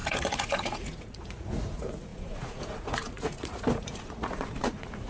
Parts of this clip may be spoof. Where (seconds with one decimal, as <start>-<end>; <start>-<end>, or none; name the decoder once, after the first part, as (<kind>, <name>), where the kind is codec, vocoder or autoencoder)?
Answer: 0.0-5.1 (vocoder, Vocos)